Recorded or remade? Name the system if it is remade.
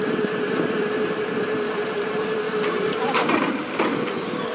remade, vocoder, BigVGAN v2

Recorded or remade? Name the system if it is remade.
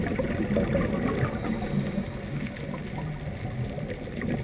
recorded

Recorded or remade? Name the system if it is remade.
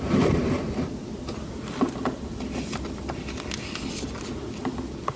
recorded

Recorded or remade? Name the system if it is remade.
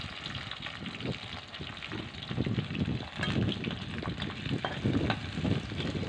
recorded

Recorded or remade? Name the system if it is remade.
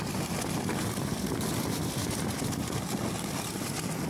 recorded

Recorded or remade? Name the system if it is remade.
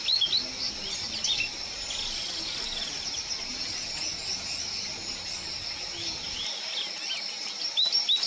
recorded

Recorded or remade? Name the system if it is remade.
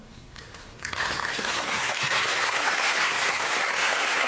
remade, codec, SNAC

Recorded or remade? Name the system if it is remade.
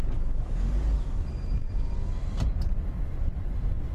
recorded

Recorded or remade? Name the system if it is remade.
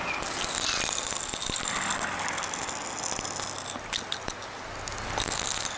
recorded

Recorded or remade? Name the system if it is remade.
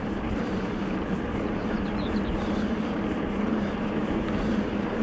remade, vocoder, BigVGAN v2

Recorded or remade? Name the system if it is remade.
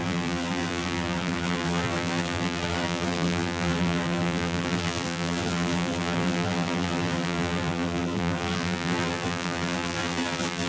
remade, vocoder, BigVGAN v2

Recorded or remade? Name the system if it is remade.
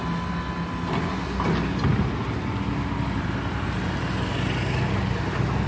recorded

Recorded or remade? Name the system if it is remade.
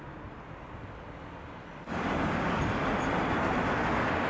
recorded